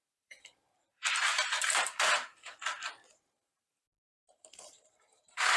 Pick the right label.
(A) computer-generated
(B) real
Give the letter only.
A